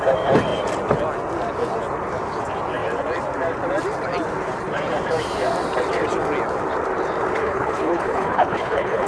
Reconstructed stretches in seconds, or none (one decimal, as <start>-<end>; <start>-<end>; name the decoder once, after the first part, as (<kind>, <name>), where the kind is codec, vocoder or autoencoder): 7.4-9.1 (codec, HILCodec)